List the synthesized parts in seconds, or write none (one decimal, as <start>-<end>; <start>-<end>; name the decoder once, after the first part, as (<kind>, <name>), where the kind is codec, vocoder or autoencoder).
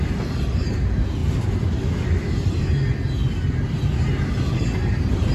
none